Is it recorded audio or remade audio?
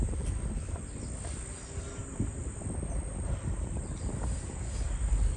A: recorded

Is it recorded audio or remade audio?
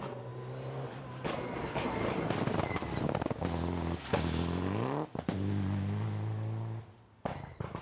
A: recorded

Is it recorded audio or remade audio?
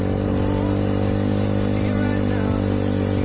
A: recorded